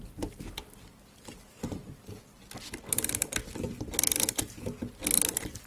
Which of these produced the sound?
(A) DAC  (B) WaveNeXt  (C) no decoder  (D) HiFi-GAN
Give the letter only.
C